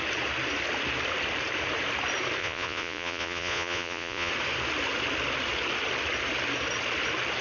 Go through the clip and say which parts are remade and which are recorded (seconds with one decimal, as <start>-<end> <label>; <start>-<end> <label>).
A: 0.0-2.4 recorded; 2.4-4.3 remade; 4.3-7.4 recorded

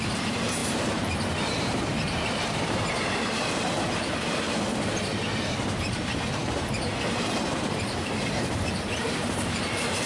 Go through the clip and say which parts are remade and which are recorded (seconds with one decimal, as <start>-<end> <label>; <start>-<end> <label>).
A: 0.0-10.1 remade

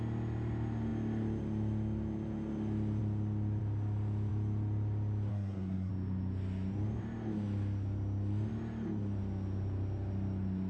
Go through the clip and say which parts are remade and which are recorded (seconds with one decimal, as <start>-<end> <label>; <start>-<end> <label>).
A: 0.0-5.3 recorded; 5.3-5.9 remade; 5.9-10.7 recorded

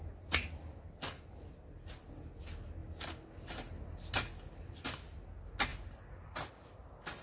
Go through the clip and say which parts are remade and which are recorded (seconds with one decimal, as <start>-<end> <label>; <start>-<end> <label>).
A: 0.0-7.2 recorded

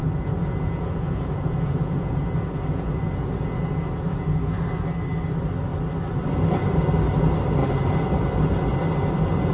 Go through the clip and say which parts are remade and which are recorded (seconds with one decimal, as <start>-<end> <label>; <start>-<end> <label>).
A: 0.0-4.6 remade; 4.6-9.5 recorded

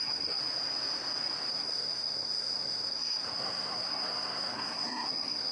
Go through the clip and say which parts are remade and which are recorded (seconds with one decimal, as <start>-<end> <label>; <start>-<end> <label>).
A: 0.0-0.4 remade; 0.4-1.5 recorded; 1.5-5.5 remade

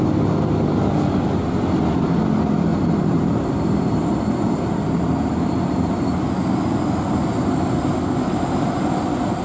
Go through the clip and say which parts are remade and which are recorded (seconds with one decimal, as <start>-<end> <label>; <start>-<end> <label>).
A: 0.0-2.7 recorded; 2.7-6.1 remade; 6.1-9.4 recorded

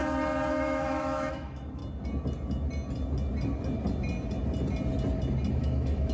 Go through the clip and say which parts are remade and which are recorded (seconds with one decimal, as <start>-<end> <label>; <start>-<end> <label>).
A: 0.0-0.5 recorded; 0.5-1.8 remade; 1.8-5.5 recorded; 5.5-6.1 remade